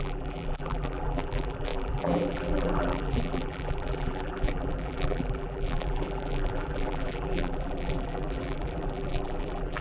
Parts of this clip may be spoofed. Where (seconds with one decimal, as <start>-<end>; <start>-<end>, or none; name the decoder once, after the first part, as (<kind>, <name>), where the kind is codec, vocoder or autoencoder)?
0.0-9.8 (vocoder, BigVGAN v2)